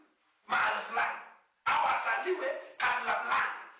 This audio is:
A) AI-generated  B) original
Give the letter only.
B